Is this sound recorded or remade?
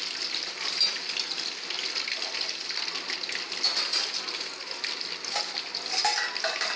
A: recorded